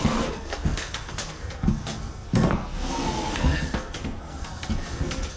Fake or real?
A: fake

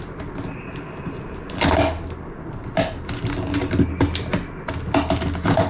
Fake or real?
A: real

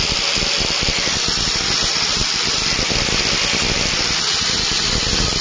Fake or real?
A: real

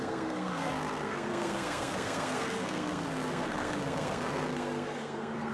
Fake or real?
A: fake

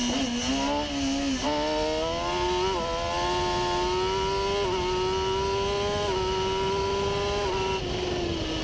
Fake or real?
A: real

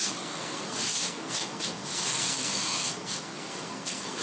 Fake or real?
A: fake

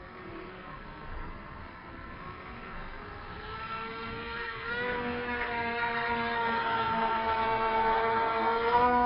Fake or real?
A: fake